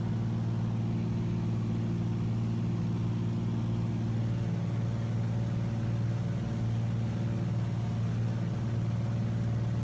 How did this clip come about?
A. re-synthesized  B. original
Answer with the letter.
B